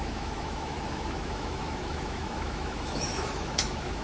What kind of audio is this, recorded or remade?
remade